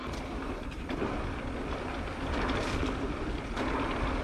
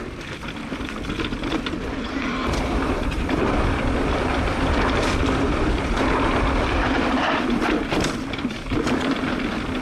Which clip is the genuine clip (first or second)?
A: first